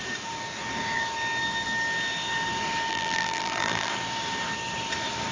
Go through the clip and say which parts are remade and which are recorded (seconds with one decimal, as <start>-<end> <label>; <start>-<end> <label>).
0.0-2.9 recorded; 2.9-3.9 remade; 3.9-5.3 recorded